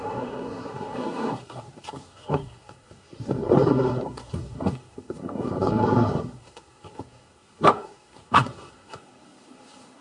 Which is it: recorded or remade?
remade